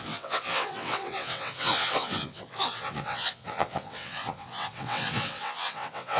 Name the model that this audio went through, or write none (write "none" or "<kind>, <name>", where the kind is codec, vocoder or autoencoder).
vocoder, WaveNeXt